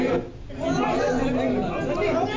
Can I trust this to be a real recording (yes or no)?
yes